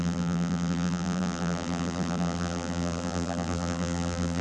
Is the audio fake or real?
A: fake